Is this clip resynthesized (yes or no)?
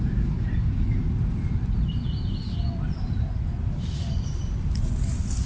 no